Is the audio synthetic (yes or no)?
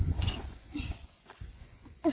yes